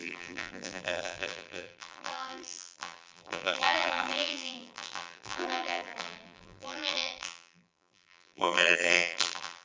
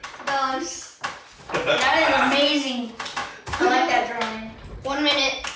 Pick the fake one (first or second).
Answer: first